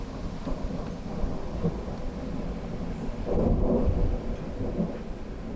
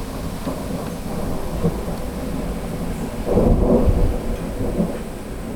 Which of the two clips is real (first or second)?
second